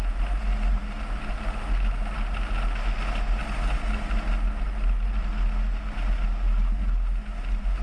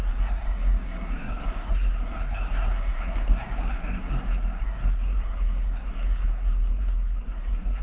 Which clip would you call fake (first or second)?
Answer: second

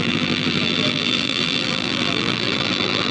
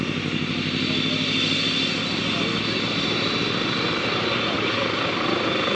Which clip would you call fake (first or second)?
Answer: first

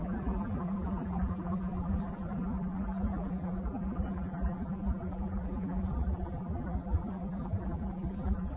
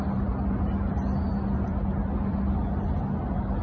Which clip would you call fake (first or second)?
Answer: first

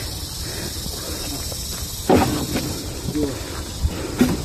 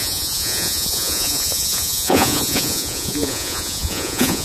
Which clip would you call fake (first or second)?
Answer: second